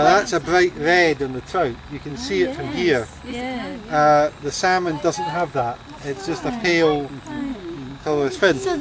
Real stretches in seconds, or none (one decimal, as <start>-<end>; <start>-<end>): 0.0-7.5